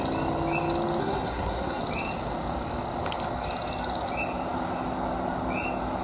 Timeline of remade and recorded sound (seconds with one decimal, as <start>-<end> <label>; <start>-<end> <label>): 0.0-1.0 recorded; 1.0-1.8 remade; 1.8-6.0 recorded